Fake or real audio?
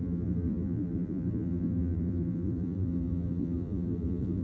fake